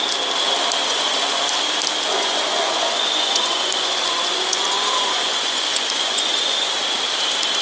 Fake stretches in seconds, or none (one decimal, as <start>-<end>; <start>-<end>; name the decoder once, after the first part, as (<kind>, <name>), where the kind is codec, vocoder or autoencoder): 0.8-1.4 (vocoder, Vocos); 2.1-6.7

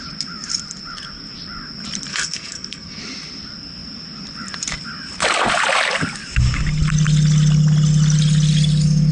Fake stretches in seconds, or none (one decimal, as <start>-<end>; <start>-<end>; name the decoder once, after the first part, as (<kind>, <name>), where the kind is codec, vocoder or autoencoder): 2.1-3.0 (codec, SNAC)

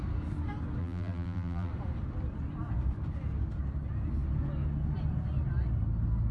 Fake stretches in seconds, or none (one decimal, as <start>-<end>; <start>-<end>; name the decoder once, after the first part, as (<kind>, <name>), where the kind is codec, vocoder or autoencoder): 0.8-1.7 (vocoder, BigVGAN v2)

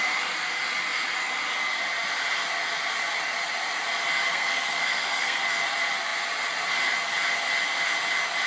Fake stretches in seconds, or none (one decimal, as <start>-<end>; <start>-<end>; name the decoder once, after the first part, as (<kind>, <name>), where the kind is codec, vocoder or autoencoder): 4.3-5.4 (codec, SNAC)

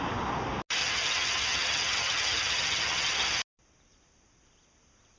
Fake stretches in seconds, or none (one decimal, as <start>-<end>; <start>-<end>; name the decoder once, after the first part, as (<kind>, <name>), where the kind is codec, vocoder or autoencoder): 0.8-3.4 (vocoder, HiFi-GAN)

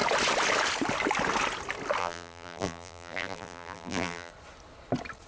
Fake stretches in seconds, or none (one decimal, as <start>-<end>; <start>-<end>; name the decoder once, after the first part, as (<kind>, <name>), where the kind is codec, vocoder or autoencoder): 2.0-4.3 (vocoder, BigVGAN v2)